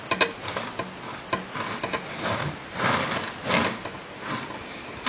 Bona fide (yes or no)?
yes